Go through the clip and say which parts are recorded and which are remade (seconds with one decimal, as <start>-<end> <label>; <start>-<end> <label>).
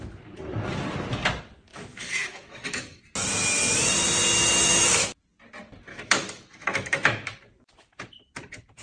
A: 0.0-1.7 recorded; 1.7-3.0 remade; 3.0-5.9 recorded; 5.9-7.4 remade; 7.4-8.8 recorded